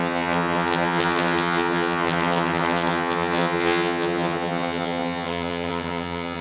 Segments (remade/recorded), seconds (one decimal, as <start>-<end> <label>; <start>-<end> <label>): 0.0-6.4 remade